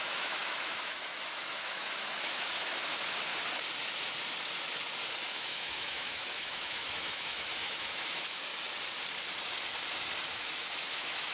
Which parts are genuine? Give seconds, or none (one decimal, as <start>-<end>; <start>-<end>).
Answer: 3.3-5.3; 8.5-10.3